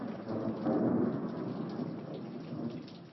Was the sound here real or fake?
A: real